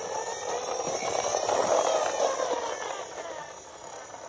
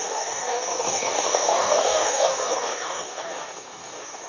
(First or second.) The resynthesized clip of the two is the second